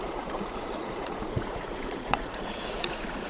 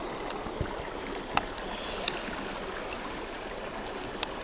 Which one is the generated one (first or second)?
first